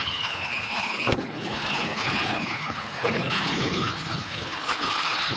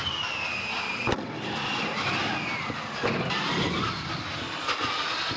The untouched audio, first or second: second